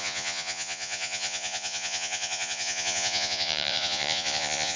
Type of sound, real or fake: fake